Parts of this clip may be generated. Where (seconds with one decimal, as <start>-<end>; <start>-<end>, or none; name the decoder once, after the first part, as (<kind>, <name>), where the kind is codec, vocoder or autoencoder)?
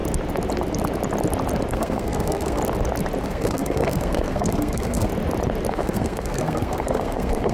1.7-2.6 (codec, SNAC); 3.2-5.1; 5.7-7.5